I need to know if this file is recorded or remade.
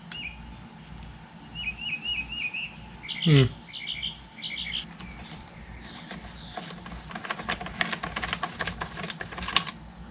recorded